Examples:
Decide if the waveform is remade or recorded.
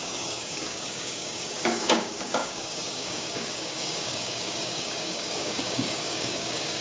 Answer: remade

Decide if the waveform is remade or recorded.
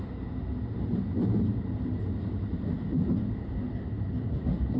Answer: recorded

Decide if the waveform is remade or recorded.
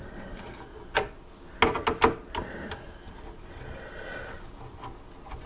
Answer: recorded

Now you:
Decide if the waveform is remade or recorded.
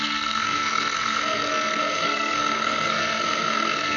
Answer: remade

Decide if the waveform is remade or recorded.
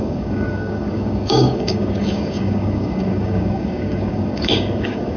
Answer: remade